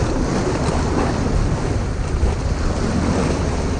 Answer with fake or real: real